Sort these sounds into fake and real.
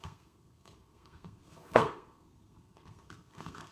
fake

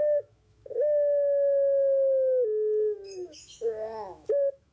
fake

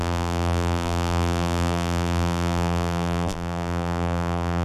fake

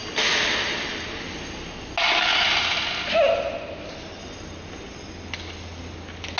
real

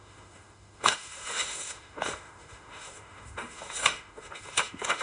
fake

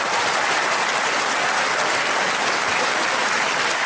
real